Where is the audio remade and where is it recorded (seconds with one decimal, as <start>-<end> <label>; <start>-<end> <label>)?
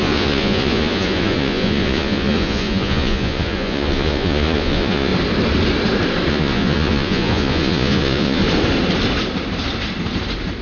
0.0-5.1 remade; 5.1-6.3 recorded; 6.3-8.4 remade; 8.4-10.6 recorded